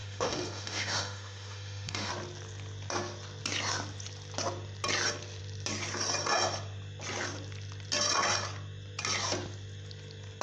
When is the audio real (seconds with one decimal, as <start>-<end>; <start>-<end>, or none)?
2.1-10.4